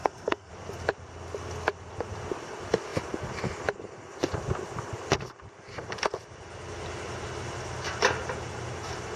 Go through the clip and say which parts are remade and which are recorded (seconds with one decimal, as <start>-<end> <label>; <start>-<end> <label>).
0.0-0.5 remade; 0.5-9.2 recorded